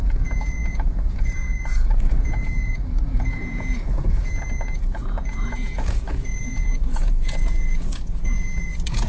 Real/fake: fake